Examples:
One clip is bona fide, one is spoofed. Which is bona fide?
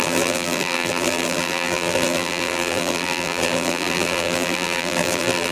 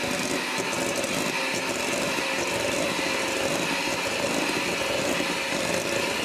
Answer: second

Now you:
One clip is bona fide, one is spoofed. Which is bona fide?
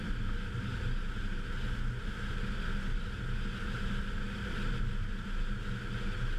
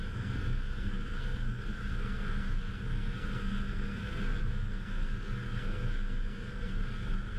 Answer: first